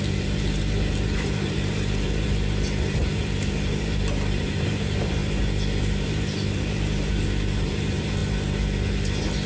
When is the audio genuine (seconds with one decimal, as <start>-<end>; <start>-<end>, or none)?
5.2-5.8; 8.2-8.9